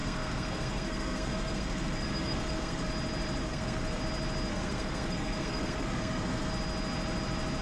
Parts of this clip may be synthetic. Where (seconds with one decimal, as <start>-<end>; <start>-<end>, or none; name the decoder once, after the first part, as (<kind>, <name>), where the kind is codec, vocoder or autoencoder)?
0.0-2.9 (codec, SNAC); 3.4-4.0; 4.5-6.5